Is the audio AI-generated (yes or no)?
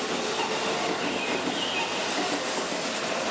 no